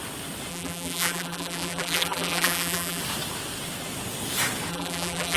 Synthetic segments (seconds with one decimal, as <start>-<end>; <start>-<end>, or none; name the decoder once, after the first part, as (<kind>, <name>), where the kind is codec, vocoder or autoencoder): 0.5-3.0 (vocoder, BigVGAN v2); 4.7-5.4